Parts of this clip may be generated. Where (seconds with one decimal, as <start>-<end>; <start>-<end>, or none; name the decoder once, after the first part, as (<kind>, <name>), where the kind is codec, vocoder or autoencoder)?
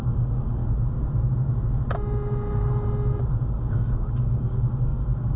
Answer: 0.0-0.6 (codec, DAC); 3.5-5.4